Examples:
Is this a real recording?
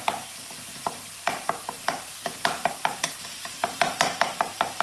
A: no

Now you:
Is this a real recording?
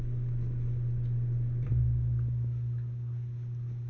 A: yes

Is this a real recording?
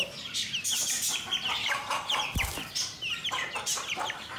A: no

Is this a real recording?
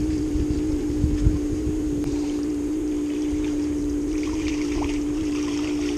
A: no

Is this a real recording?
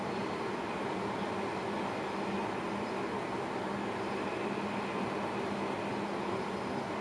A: yes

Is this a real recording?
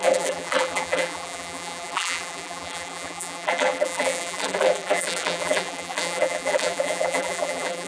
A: no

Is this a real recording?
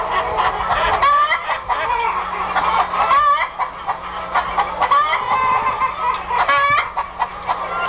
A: yes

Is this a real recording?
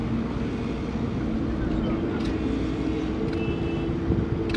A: yes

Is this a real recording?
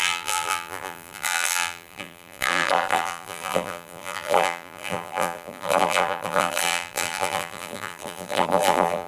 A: no